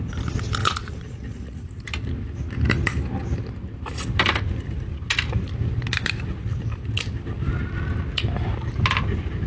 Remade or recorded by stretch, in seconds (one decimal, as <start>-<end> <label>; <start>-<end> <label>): 0.0-0.6 recorded; 0.6-1.7 remade; 1.7-9.5 recorded